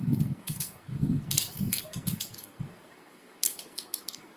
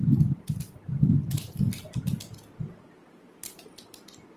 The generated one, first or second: first